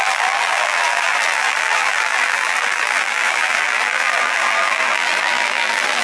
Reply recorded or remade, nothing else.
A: remade